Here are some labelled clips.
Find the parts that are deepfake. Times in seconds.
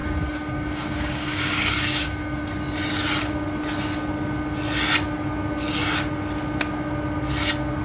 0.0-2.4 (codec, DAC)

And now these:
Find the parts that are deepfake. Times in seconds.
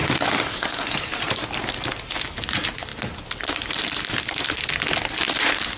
0.0-2.9 (vocoder, BigVGAN v2); 5.1-5.8